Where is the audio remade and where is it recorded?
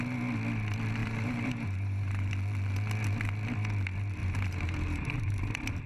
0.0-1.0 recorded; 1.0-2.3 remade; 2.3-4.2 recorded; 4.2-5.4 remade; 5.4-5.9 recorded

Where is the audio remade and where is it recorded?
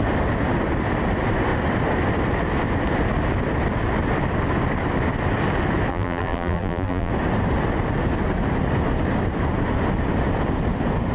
0.0-5.9 recorded; 5.9-7.1 remade; 7.1-11.1 recorded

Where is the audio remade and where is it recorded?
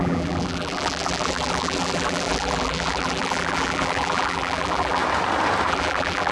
0.0-5.0 remade; 5.0-5.7 recorded; 5.7-6.3 remade